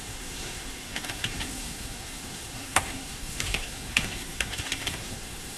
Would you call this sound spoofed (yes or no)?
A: yes